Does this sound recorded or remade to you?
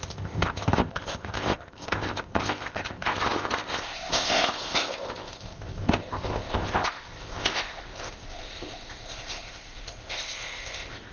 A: remade